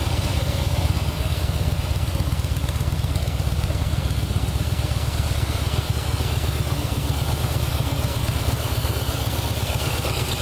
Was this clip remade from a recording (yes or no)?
yes